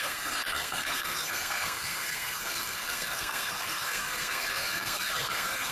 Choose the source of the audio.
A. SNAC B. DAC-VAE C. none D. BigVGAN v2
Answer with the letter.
A